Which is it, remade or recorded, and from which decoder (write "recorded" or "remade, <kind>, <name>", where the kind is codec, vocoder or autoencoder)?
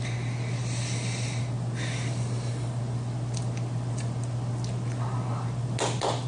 recorded